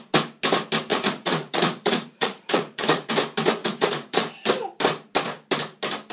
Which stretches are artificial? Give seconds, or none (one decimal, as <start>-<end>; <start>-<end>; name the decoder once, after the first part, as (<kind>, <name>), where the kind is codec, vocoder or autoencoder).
0.9-3.1 (vocoder, Vocos); 3.6-4.2